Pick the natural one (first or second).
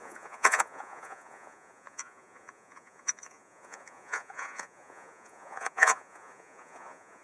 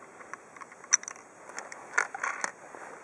second